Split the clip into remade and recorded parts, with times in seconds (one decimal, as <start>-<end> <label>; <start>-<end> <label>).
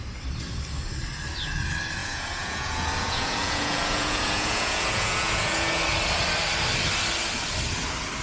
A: 0.0-2.0 recorded; 2.0-5.8 remade; 5.8-8.2 recorded